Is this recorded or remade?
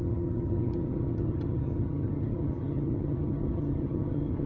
remade